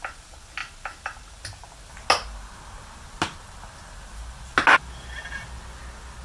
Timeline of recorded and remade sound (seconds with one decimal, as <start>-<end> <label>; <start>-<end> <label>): 0.0-6.2 recorded